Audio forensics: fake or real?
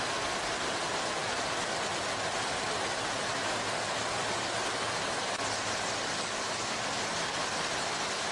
real